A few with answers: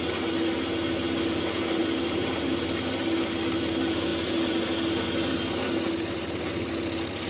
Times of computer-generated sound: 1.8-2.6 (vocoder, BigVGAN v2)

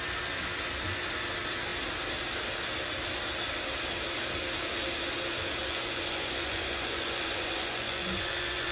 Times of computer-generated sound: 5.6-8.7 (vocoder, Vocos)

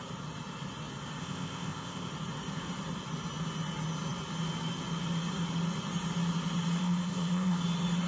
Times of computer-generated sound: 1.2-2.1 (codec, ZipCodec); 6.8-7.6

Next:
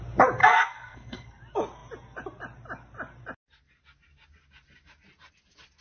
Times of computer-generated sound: 0.4-1.4 (codec, SNAC)

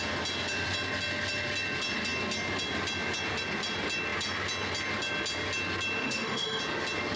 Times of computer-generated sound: 6.0-6.6 (autoencoder, DAC-VAE)

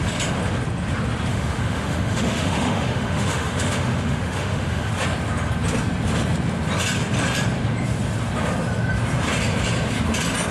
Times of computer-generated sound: 1.3-4.9 (autoencoder, DAC-VAE)

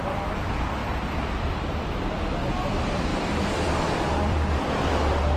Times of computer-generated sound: 0.0-0.8 (vocoder, BigVGAN v2); 2.7-5.4

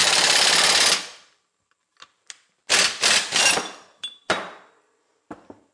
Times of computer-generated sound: none